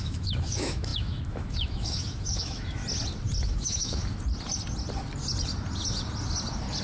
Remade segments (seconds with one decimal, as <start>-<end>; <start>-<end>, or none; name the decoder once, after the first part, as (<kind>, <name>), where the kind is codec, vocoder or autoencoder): 0.0-2.8 (autoencoder, DAC-VAE); 3.4-4.0